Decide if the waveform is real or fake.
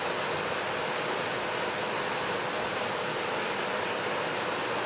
real